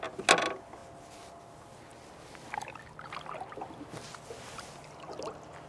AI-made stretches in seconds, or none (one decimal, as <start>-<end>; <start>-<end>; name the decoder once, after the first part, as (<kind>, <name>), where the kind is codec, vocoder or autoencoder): none